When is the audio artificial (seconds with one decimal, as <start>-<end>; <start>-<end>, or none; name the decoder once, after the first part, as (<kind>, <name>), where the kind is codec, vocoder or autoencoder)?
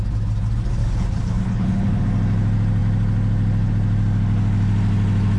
0.8-2.0 (codec, HILCodec)